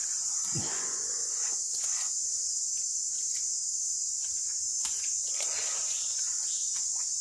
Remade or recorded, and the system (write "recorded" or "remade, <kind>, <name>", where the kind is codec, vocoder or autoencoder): remade, vocoder, Vocos